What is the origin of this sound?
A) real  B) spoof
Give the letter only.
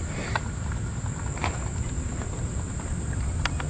A